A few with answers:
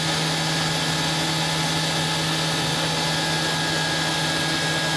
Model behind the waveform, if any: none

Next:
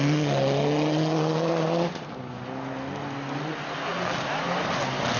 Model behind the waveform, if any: none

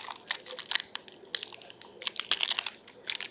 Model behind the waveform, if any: none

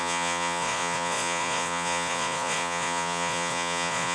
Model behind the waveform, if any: vocoder, Vocos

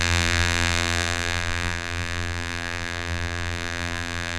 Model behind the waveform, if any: vocoder, BigVGAN v2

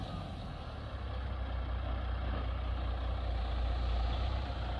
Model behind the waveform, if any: none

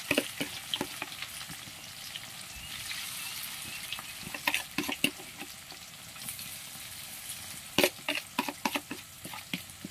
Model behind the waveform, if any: none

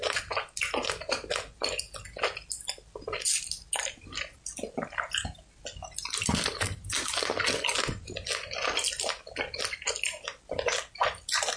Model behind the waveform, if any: none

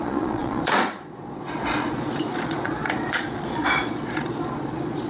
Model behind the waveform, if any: vocoder, Vocos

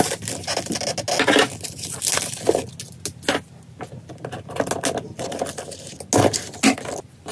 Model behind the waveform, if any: none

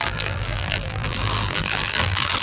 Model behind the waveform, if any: vocoder, BigVGAN v2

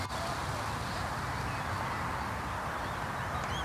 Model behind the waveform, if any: none